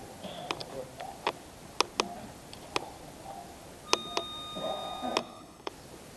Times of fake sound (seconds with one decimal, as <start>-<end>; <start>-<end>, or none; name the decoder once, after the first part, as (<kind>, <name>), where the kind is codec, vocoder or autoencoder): 5.2-5.7 (codec, HILCodec)